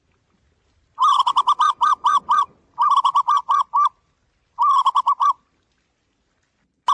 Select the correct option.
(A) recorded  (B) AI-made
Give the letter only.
A